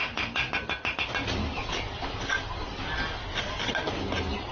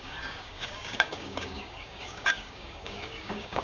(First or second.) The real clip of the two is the first